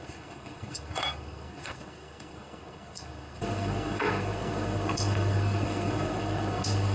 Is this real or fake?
fake